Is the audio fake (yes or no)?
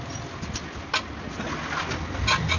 no